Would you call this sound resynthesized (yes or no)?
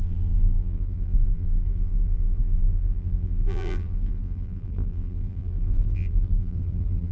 yes